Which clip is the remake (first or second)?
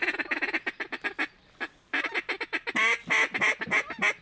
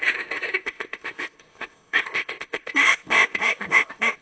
second